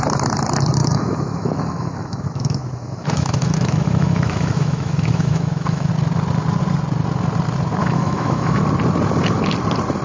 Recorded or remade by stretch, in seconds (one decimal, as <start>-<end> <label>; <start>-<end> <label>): 0.0-0.8 recorded; 0.8-5.9 remade; 5.9-7.8 recorded; 7.8-8.6 remade; 8.6-10.0 recorded

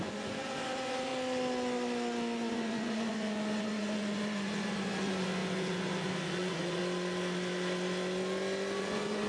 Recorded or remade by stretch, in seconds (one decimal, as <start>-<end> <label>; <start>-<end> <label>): 0.0-1.1 remade; 1.1-2.5 recorded; 2.5-6.8 remade; 6.8-8.8 recorded; 8.8-9.3 remade

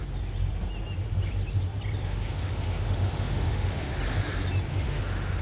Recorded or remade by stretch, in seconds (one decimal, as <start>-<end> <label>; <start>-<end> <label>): 0.0-2.0 recorded; 2.0-4.0 remade; 4.0-4.7 recorded; 4.7-5.4 remade

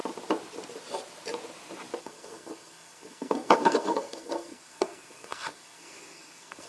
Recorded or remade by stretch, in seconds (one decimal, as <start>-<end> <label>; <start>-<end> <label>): 0.0-2.0 recorded; 2.0-6.7 remade

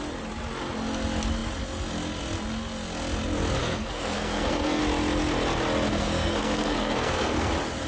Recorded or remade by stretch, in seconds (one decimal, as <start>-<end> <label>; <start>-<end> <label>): 0.0-3.6 recorded; 3.6-4.8 remade; 4.8-5.9 recorded; 5.9-7.5 remade; 7.5-7.9 recorded

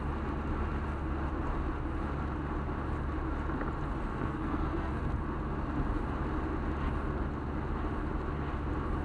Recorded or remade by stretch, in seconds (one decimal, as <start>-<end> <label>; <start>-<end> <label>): 0.0-4.1 recorded; 4.1-5.0 remade; 5.0-9.0 recorded

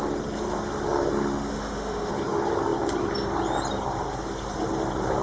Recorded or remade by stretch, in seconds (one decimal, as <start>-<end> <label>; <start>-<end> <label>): 0.0-1.5 recorded; 1.5-2.1 remade; 2.1-5.2 recorded

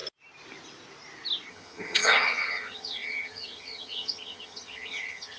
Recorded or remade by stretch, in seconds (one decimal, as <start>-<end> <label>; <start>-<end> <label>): 0.0-1.5 recorded; 1.5-5.4 remade